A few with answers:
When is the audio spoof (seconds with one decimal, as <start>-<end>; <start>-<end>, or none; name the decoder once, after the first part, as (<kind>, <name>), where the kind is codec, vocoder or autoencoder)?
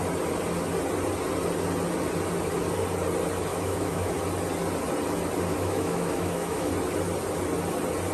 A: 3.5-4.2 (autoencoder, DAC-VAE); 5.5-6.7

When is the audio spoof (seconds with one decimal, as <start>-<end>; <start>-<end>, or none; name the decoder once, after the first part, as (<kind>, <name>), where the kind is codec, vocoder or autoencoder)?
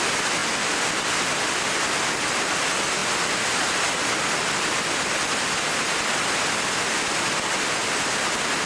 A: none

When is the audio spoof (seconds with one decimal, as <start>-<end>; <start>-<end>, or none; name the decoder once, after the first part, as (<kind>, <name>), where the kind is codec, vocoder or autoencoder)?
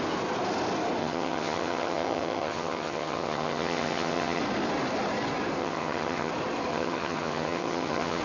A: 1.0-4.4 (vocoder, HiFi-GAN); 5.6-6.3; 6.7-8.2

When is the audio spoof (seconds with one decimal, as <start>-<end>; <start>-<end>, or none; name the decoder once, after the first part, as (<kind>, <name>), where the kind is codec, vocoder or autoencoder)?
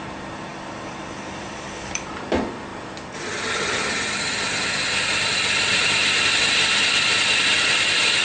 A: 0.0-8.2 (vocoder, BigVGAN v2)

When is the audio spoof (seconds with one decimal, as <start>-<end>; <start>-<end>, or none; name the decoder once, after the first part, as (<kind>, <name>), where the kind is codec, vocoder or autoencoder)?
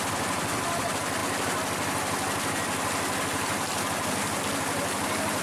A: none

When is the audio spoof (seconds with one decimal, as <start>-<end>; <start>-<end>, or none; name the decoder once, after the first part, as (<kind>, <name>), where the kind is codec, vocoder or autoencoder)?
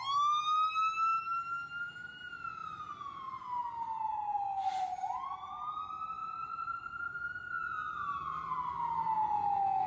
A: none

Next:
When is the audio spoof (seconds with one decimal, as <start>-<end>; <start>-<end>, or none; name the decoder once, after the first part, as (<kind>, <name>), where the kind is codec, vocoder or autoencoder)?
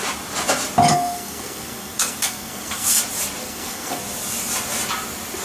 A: 0.9-3.0 (codec, SNAC); 3.4-4.0